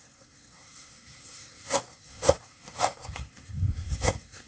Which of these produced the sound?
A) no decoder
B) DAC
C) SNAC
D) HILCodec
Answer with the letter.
C